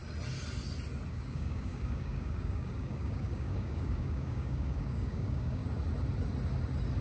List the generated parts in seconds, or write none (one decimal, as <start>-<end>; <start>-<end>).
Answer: 1.1-5.6

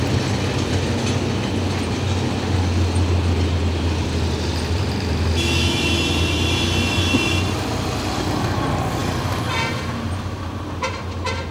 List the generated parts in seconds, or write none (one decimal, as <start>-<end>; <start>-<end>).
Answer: none

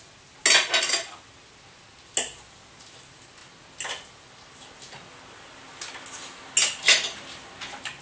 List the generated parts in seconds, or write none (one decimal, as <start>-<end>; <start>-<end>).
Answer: none

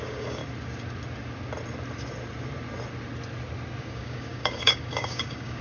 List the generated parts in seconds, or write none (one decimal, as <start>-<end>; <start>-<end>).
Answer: 0.0-0.4; 3.8-5.6

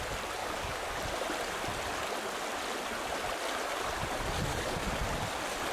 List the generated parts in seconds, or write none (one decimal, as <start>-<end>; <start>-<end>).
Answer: 0.4-1.0; 4.5-5.0